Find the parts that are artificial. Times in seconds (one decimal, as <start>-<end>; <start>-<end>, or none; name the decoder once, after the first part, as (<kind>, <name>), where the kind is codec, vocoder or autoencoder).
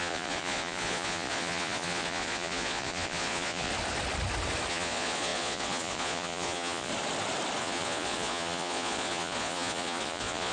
0.0-3.7 (vocoder, Vocos); 4.7-6.9; 7.6-10.5